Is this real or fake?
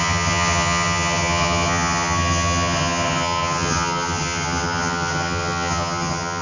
fake